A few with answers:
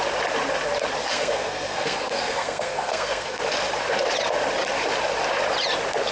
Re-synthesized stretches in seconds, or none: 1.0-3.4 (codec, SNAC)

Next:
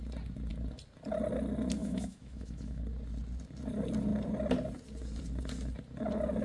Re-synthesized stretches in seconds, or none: 1.8-2.8 (autoencoder, DAC-VAE)

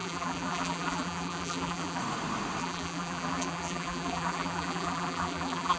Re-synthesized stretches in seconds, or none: 0.0-2.0 (vocoder, BigVGAN v2); 2.6-5.8

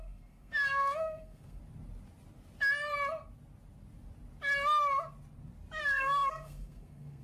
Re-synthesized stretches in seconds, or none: 0.0-1.6 (codec, SNAC); 5.8-7.2

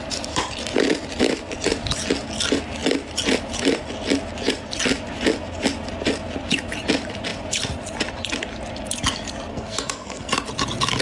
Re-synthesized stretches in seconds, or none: 9.5-10.3 (codec, SNAC)

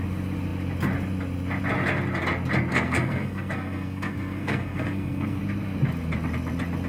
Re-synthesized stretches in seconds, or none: 2.7-5.4 (codec, SNAC)